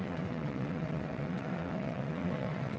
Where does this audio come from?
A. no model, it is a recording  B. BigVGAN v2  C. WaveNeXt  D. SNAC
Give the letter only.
C